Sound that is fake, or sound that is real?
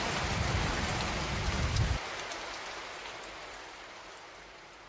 real